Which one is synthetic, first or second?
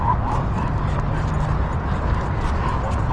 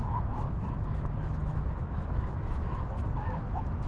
second